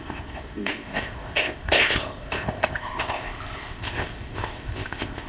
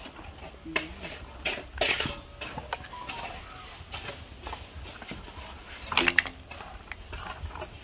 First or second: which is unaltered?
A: second